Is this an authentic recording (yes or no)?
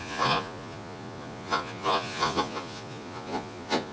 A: no